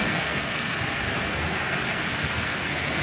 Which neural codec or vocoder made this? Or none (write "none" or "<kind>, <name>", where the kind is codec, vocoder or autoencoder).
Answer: codec, SNAC